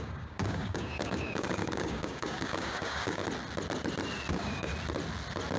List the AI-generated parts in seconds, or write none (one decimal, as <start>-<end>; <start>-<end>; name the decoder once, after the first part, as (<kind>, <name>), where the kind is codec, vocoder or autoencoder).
0.0-3.2 (codec, DAC); 4.3-4.7